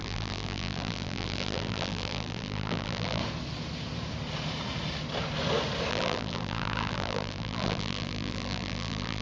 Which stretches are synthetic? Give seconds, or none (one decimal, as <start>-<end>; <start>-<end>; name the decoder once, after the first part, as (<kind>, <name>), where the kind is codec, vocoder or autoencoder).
0.0-3.2 (vocoder, BigVGAN v2); 5.9-9.2